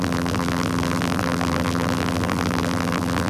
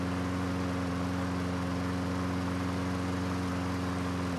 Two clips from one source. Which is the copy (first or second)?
first